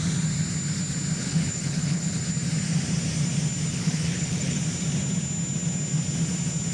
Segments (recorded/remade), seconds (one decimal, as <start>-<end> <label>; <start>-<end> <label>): 0.0-1.2 recorded; 1.2-2.2 remade; 2.2-3.7 recorded; 3.7-4.6 remade; 4.6-6.7 recorded